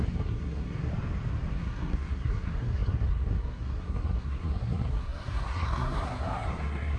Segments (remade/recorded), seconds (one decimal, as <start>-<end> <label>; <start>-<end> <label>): 0.0-0.9 remade; 0.9-1.5 recorded; 1.5-7.0 remade

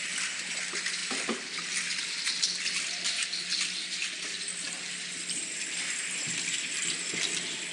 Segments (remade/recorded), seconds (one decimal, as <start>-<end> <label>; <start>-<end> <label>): 0.0-7.7 recorded

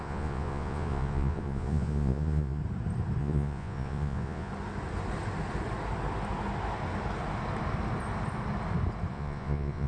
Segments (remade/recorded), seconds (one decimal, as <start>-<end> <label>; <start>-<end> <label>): 0.0-2.6 remade; 2.6-3.2 recorded; 3.2-4.5 remade; 4.5-9.1 recorded; 9.1-9.9 remade

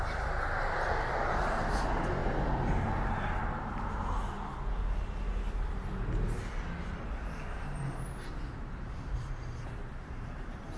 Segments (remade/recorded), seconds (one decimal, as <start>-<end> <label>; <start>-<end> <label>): 0.0-2.2 remade; 2.2-3.4 recorded; 3.4-4.5 remade; 4.5-8.7 recorded; 8.7-10.8 remade

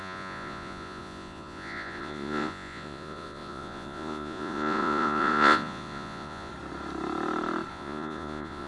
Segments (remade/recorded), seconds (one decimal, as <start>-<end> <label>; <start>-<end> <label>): 0.0-6.5 remade; 6.5-7.7 recorded; 7.7-8.7 remade

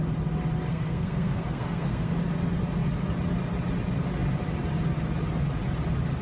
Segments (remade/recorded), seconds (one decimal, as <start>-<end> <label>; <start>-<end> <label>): 0.0-0.7 recorded; 0.7-2.1 remade; 2.1-6.2 recorded